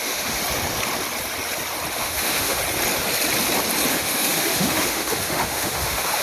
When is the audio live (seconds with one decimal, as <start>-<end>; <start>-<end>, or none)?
0.4-1.9; 2.6-3.9